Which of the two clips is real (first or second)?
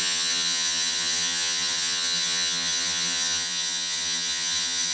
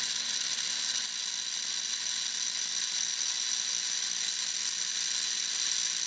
second